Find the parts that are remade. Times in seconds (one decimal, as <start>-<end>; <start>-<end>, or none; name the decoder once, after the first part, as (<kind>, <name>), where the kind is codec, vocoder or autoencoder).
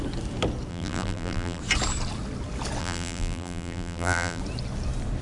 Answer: 0.7-1.6 (vocoder, BigVGAN v2); 2.8-4.4